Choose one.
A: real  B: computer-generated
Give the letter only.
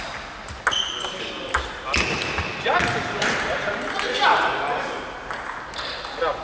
A